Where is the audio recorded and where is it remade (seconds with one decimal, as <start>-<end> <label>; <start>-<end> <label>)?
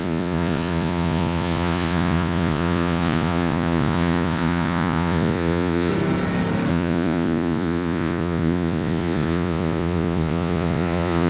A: 0.0-5.9 remade; 5.9-6.7 recorded; 6.7-11.3 remade